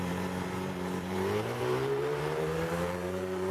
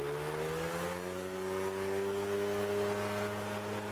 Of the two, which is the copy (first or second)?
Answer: first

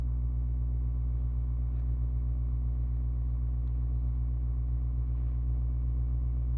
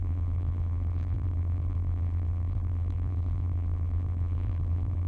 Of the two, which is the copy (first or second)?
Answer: second